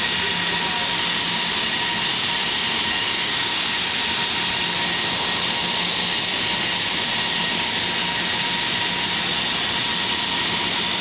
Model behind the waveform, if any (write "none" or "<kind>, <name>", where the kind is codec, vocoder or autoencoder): none